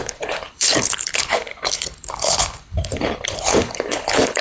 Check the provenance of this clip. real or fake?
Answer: fake